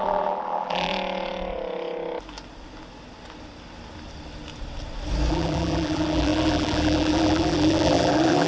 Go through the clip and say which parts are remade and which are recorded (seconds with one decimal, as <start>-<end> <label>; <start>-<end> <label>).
0.0-0.9 remade; 0.9-5.3 recorded; 5.3-8.5 remade